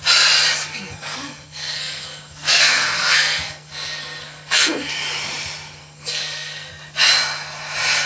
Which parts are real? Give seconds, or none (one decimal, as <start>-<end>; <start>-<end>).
0.0-0.7; 4.9-5.8; 6.7-8.1

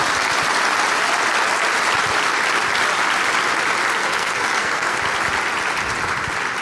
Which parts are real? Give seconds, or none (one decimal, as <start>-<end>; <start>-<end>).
0.0-4.0; 5.0-6.6

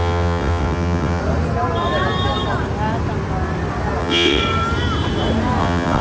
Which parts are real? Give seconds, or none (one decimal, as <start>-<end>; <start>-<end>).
1.2-4.0; 4.4-5.6

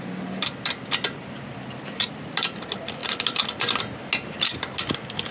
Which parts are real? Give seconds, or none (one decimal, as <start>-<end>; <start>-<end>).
0.0-5.3

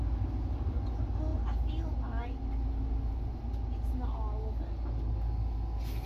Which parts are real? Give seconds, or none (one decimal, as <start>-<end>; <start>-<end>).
0.0-6.1